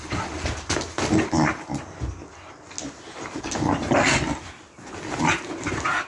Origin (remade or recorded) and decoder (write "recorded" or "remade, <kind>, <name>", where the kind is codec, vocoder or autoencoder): recorded